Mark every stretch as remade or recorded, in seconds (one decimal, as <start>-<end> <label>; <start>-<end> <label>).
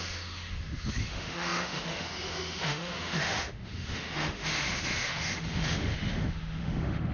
0.0-7.1 remade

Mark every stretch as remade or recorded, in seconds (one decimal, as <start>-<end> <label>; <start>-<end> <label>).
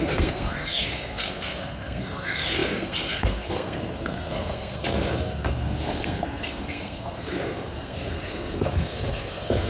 0.0-9.7 remade